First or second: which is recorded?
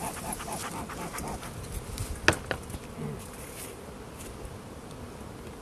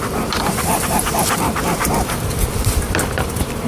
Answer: first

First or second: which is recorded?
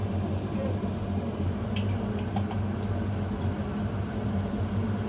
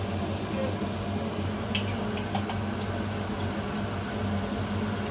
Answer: second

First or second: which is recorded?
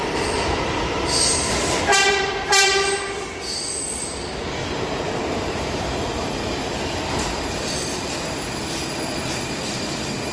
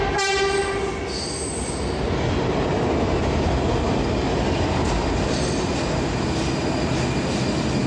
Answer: second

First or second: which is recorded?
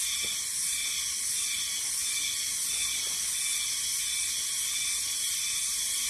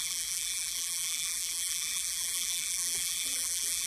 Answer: first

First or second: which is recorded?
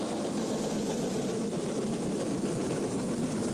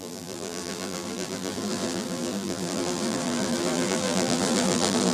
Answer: first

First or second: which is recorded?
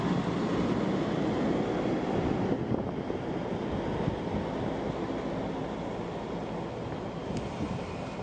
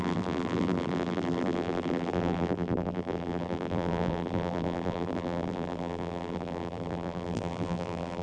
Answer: first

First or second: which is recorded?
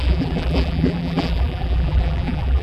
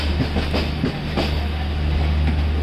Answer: second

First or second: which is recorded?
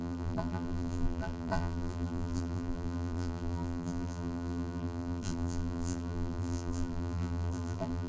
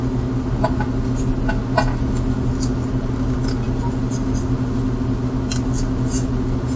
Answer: second